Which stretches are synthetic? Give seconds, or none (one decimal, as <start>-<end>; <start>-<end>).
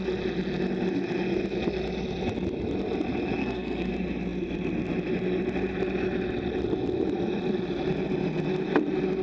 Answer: 3.4-3.9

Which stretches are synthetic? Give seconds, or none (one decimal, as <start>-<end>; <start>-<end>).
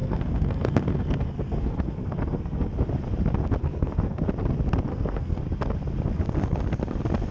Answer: 0.0-2.7; 3.6-4.2; 4.9-5.4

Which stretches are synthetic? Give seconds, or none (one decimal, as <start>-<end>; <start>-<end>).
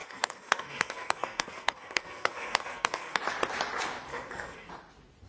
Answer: 0.0-3.2; 4.1-4.7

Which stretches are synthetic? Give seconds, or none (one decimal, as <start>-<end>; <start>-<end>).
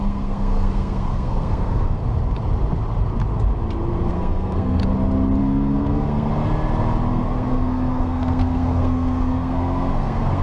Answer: 0.0-2.0; 4.1-4.8; 5.4-6.3; 7.1-10.4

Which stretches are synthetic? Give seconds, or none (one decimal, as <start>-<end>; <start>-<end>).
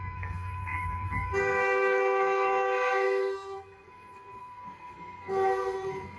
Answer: 0.0-6.2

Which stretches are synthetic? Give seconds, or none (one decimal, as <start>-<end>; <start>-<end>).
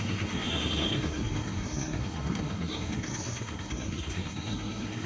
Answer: 0.0-5.1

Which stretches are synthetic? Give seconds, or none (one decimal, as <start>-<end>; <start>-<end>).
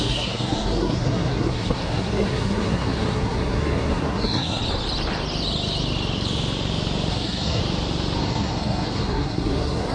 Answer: 0.0-4.6; 7.1-7.6; 8.2-9.9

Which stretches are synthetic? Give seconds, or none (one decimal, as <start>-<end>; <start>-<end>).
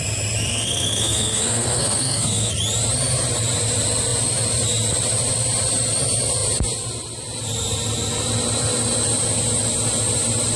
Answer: 0.5-2.5